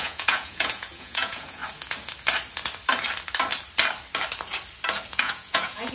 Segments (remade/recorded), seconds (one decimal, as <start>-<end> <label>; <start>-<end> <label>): 0.0-1.6 remade; 1.6-5.1 recorded; 5.1-5.9 remade